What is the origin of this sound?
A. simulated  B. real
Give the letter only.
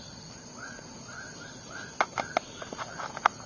B